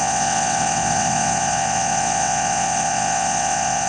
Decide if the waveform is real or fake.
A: fake